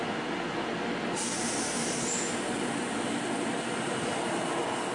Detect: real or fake real